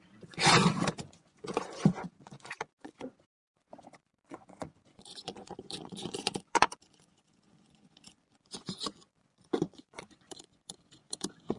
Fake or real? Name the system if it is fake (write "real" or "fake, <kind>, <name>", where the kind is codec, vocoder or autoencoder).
fake, vocoder, Vocos